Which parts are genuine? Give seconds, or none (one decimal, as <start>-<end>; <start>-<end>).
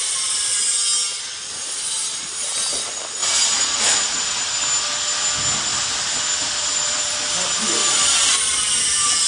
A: 0.0-5.7; 7.1-9.3